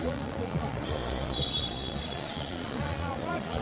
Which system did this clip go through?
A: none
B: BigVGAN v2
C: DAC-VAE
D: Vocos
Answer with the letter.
D